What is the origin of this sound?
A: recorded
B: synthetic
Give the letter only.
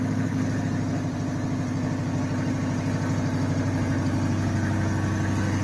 A